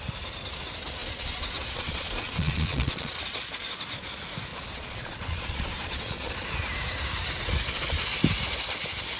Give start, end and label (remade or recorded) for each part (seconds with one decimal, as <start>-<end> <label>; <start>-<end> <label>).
0.0-1.0 recorded; 1.0-3.1 remade; 3.1-4.5 recorded; 4.5-6.3 remade; 6.3-9.2 recorded